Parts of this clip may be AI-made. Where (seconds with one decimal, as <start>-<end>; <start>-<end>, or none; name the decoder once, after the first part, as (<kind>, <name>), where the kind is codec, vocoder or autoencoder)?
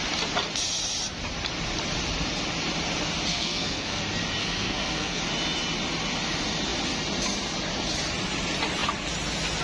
3.3-4.0 (codec, SNAC); 4.4-5.2